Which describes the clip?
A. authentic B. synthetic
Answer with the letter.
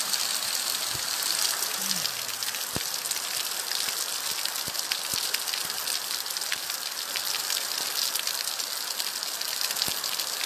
A